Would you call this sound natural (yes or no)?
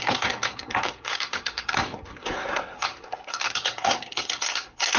no